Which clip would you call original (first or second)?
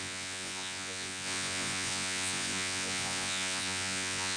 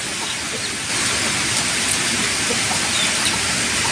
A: second